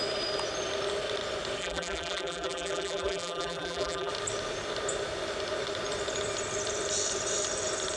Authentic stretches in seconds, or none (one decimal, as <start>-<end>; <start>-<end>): 0.0-1.6; 4.1-8.0